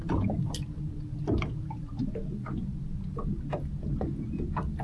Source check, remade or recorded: recorded